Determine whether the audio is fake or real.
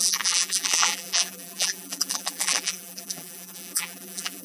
fake